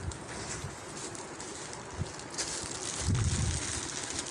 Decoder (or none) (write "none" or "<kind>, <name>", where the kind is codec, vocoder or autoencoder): none